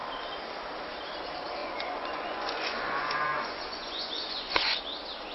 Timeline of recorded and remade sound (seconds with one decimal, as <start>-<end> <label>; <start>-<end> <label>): 0.0-1.6 recorded; 1.6-4.8 remade; 4.8-5.3 recorded